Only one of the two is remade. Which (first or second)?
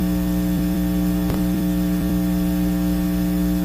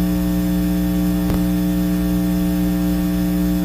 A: first